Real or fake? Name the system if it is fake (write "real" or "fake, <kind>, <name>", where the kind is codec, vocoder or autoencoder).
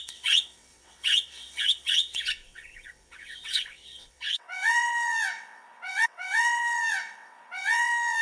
fake, vocoder, WaveNeXt